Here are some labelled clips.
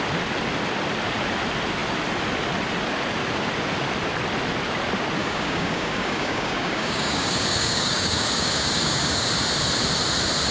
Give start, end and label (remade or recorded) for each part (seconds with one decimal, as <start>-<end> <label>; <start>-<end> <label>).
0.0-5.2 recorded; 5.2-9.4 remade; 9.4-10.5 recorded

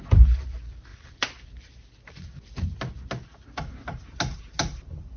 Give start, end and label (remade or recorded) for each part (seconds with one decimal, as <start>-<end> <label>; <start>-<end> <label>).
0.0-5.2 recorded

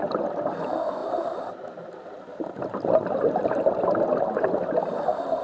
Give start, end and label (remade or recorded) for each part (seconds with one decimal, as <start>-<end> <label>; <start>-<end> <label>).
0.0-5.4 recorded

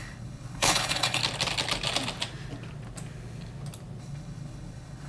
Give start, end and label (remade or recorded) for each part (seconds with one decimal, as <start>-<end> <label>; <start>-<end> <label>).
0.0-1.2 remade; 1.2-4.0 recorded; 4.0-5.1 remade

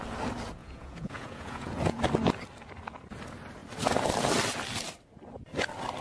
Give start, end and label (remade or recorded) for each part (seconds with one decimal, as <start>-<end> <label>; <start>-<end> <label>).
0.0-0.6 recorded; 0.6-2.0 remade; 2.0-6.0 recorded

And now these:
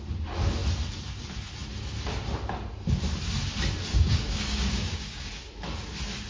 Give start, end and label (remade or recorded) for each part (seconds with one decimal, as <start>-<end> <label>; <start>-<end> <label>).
0.0-3.9 recorded; 3.9-5.3 remade; 5.3-6.3 recorded

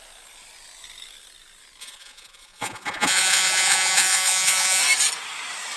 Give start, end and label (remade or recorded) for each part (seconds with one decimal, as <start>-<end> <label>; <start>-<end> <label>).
0.0-1.8 recorded; 1.8-4.8 remade; 4.8-5.8 recorded

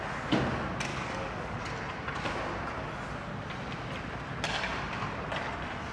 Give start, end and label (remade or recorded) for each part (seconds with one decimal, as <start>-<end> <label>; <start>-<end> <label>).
0.0-0.9 recorded; 0.9-1.6 remade; 1.6-5.9 recorded